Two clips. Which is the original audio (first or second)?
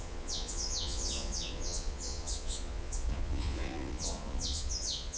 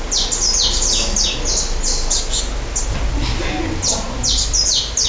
second